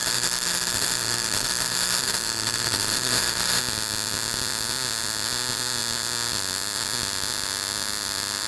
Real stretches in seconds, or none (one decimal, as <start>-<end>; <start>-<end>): 3.6-8.5